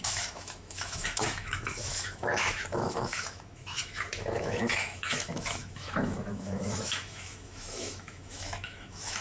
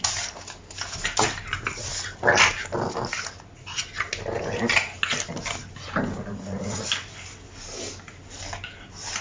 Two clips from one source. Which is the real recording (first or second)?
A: second